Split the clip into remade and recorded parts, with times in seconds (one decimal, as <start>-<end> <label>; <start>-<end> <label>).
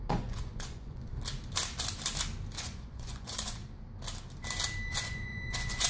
0.0-1.1 remade; 1.1-2.6 recorded; 2.6-3.6 remade; 3.6-4.9 recorded; 4.9-5.9 remade